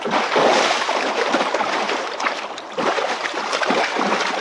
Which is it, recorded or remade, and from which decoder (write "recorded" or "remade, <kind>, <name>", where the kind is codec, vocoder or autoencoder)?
recorded